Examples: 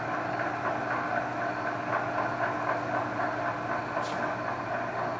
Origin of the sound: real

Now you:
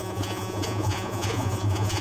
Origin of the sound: fake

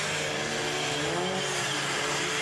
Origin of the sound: real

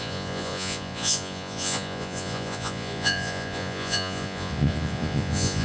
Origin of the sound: fake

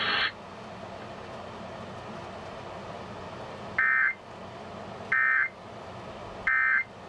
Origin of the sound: real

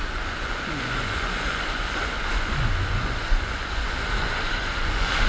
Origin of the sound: fake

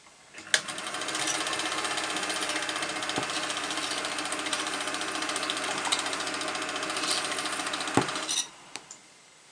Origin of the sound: real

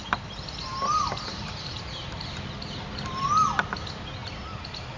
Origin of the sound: real